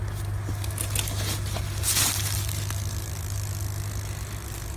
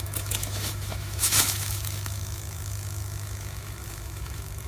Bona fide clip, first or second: first